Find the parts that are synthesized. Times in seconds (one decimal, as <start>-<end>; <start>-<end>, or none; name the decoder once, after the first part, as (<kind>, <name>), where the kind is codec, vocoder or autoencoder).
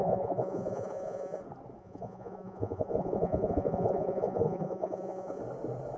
0.0-1.4 (vocoder, Vocos); 1.8-5.4